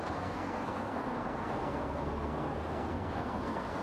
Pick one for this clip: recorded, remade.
remade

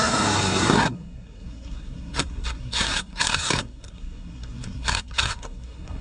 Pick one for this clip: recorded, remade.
remade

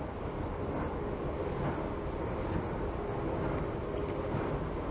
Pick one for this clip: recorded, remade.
recorded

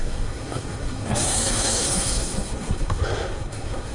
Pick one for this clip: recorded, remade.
remade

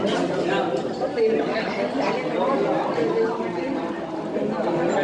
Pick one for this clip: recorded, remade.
recorded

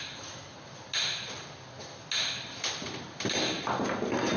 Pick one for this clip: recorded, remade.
recorded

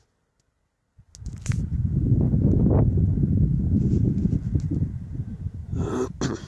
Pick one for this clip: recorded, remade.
recorded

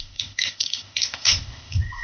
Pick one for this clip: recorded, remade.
remade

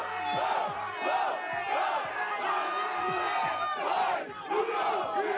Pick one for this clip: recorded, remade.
recorded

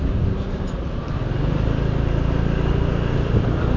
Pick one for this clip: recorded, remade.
recorded